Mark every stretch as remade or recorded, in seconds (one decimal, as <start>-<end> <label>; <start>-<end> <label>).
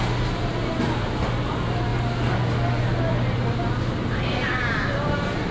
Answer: 0.0-5.5 recorded